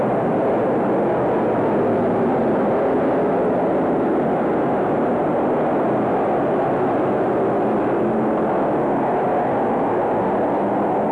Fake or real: real